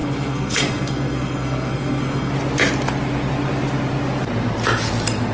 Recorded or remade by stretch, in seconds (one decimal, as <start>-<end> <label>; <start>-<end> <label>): 0.0-2.3 remade; 2.3-5.3 recorded